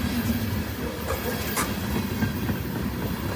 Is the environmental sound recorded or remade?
recorded